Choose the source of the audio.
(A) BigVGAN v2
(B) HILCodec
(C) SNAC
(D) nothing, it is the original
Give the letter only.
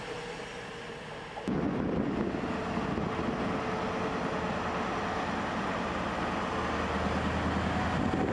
D